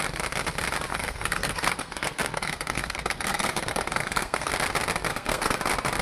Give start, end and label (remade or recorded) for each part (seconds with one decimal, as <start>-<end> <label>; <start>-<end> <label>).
0.0-0.9 recorded; 0.9-4.5 remade; 4.5-5.1 recorded; 5.1-5.6 remade; 5.6-6.0 recorded